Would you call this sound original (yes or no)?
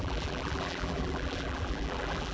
no